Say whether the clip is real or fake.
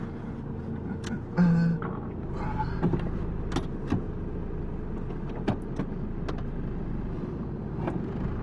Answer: real